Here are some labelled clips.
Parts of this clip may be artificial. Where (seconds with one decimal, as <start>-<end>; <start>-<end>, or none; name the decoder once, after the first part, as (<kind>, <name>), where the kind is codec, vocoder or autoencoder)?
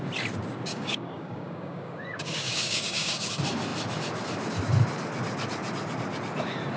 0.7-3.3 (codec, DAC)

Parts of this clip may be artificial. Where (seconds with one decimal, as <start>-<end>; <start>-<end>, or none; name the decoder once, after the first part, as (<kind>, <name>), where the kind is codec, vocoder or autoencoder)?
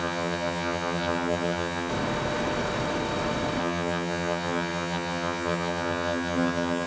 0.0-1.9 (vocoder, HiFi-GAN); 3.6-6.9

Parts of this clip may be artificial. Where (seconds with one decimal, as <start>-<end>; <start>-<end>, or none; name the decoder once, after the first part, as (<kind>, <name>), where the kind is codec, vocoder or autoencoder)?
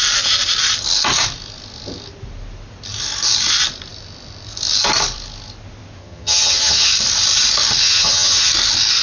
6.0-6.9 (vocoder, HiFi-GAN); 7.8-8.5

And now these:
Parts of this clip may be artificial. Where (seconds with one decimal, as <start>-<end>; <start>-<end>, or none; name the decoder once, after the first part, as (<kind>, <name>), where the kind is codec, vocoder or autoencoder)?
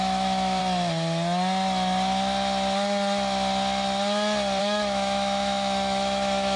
0.0-0.6 (autoencoder, DAC-VAE); 4.6-6.6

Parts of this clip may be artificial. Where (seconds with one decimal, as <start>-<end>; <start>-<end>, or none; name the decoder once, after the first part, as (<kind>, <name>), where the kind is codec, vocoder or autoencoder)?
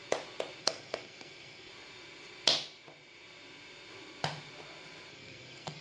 0.6-1.7 (codec, SNAC); 5.1-5.8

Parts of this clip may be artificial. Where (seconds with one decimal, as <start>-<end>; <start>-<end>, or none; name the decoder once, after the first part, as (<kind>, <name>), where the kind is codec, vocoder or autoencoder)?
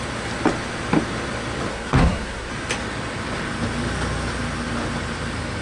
1.7-2.5 (codec, SNAC)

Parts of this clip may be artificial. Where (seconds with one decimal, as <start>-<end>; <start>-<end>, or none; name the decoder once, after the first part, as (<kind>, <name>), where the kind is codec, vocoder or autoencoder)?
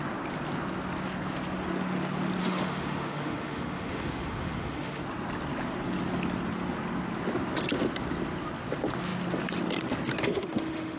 2.4-5.0 (autoencoder, DAC-VAE); 10.3-11.0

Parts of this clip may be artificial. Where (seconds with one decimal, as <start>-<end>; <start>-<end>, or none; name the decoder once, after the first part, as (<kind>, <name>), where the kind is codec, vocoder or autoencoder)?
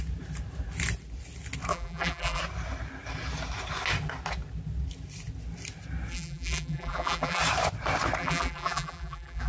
1.7-2.4 (vocoder, BigVGAN v2); 6.1-7.4; 8.2-9.5